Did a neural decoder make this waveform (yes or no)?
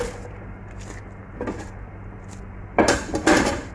no